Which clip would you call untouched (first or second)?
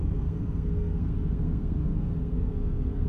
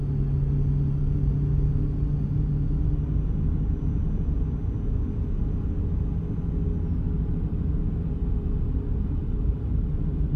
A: second